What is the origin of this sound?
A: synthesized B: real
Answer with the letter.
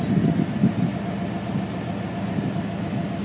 B